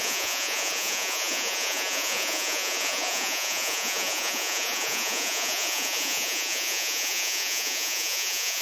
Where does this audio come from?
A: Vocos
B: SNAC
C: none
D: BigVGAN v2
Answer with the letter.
A